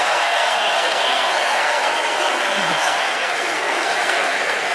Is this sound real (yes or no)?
no